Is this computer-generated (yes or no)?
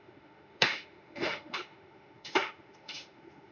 yes